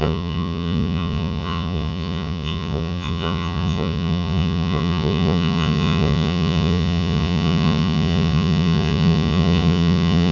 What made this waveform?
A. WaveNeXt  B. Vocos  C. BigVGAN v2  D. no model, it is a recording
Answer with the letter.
B